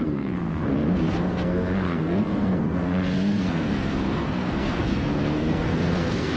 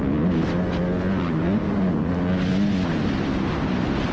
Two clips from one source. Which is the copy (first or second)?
first